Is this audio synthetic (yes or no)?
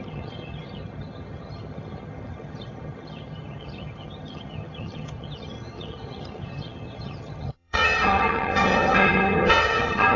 yes